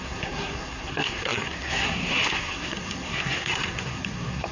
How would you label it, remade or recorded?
remade